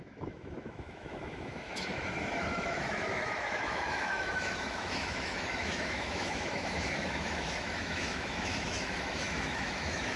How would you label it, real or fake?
fake